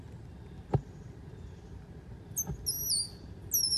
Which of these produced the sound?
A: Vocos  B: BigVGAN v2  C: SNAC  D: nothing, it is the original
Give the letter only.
D